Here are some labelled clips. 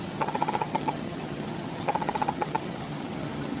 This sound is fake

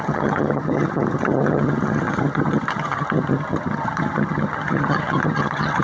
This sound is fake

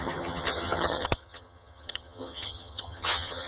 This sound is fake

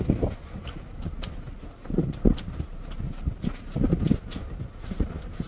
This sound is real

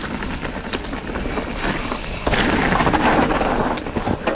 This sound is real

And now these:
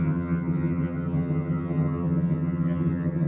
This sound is fake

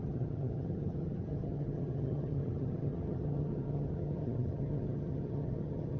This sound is fake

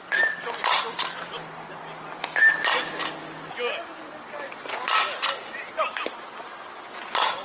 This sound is real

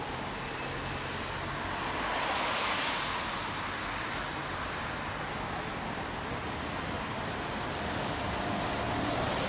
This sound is real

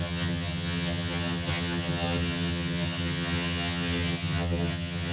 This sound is fake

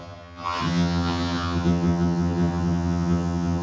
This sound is fake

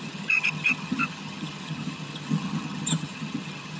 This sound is fake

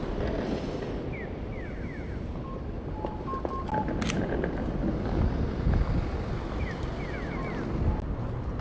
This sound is real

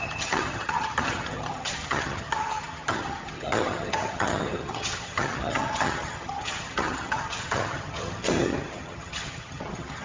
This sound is fake